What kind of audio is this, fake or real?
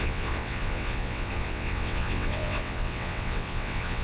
fake